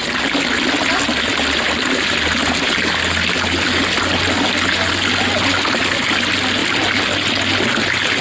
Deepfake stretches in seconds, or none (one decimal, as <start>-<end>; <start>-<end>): none